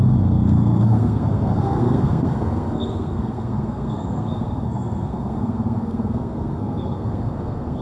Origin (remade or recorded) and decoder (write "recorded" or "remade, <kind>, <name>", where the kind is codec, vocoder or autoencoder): remade, codec, SNAC